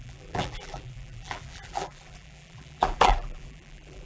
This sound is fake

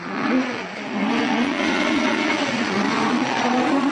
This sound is fake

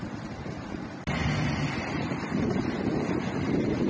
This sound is real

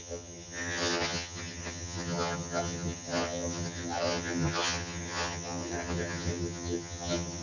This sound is fake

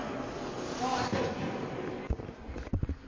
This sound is real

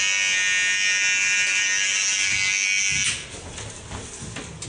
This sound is real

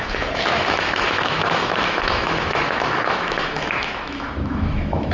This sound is fake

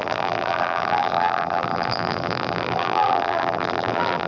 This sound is fake